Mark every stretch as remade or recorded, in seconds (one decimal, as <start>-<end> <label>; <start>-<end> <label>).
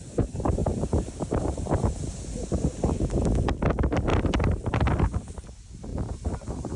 0.0-0.6 recorded; 0.6-2.1 remade; 2.1-5.9 recorded; 5.9-6.8 remade